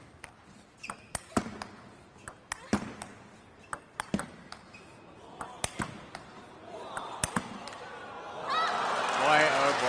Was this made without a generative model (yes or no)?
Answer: yes